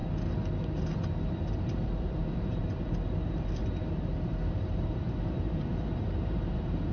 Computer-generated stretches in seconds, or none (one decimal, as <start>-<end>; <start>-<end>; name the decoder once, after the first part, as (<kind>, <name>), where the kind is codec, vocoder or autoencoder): 1.5-6.9 (vocoder, BigVGAN v2)